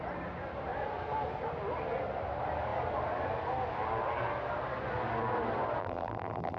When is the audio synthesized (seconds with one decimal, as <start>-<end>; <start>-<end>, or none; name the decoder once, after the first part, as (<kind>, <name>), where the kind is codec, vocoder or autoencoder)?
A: 5.8-6.6 (vocoder, BigVGAN v2)